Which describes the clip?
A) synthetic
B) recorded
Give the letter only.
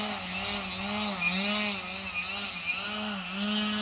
B